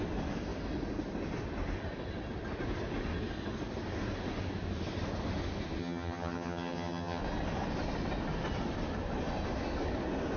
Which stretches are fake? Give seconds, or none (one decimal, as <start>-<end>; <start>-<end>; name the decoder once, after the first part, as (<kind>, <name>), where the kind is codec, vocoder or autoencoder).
5.8-7.2 (vocoder, HiFi-GAN)

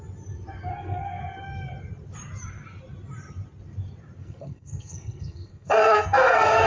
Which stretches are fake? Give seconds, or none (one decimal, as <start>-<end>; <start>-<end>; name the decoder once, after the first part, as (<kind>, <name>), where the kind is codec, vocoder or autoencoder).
0.7-1.2 (codec, SNAC); 4.2-6.7

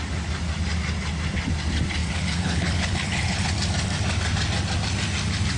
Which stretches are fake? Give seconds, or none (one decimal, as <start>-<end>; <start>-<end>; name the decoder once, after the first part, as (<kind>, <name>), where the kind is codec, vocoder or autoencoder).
2.0-3.5 (codec, HILCodec)

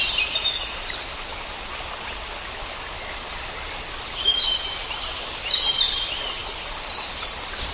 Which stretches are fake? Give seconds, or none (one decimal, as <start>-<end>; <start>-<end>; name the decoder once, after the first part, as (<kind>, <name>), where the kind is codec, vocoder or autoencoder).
0.0-1.3 (vocoder, BigVGAN v2); 2.4-7.7

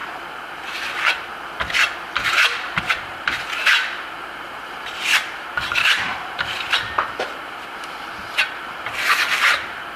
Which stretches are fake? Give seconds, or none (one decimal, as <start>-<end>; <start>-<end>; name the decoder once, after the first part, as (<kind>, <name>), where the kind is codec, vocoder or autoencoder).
2.8-10.0 (vocoder, BigVGAN v2)

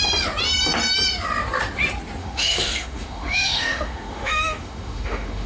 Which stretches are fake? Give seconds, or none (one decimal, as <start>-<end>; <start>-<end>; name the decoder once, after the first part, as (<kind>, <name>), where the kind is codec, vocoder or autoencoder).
2.2-5.5 (autoencoder, DAC-VAE)